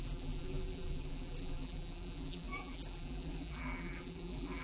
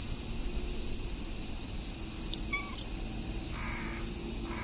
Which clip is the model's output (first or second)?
first